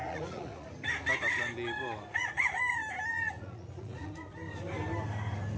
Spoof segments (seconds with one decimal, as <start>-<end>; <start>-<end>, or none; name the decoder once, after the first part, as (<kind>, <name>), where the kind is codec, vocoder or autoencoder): 0.0-0.7 (vocoder, Vocos); 2.1-2.6; 3.1-4.1

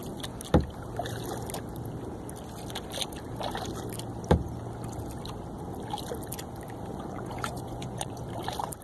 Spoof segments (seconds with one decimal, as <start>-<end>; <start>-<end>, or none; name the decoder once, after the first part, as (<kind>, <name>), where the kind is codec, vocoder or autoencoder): 6.9-8.2 (vocoder, Vocos)

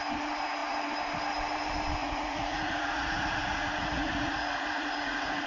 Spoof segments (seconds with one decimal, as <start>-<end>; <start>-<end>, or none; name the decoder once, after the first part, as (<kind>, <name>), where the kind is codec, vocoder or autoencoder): 2.0-5.5 (vocoder, Vocos)

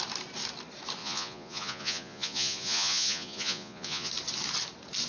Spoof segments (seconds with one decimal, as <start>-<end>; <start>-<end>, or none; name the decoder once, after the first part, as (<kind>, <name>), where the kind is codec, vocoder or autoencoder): 1.0-4.1 (vocoder, Vocos)

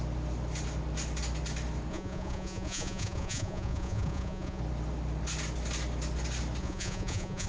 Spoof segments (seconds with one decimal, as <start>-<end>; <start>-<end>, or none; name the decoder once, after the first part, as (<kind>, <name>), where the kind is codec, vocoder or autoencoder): 1.9-4.6 (vocoder, Vocos); 6.6-7.5